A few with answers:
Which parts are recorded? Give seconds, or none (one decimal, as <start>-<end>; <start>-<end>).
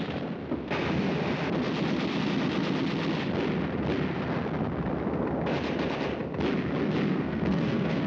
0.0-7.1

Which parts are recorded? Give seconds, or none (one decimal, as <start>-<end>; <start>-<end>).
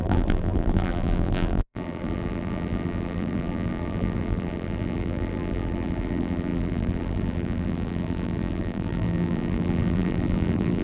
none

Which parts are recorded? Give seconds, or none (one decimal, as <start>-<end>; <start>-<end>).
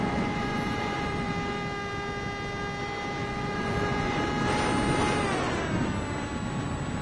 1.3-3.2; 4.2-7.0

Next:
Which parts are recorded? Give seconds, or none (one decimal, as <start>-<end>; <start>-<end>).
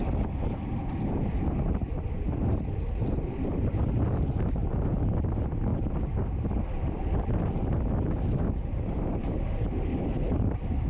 0.0-10.9